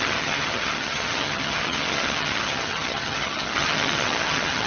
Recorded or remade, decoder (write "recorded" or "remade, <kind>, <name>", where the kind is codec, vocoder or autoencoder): remade, vocoder, HiFi-GAN